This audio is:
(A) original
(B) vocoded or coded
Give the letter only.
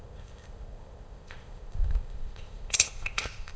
B